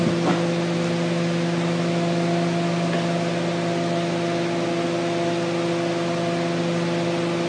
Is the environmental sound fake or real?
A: real